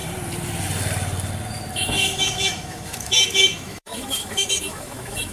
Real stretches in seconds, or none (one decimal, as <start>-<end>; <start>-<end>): 0.0-1.7